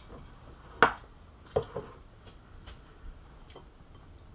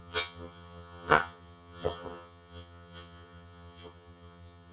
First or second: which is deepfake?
second